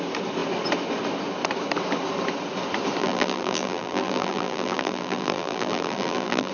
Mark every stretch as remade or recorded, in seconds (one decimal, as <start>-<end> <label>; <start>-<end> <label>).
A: 0.0-3.0 recorded; 3.0-6.5 remade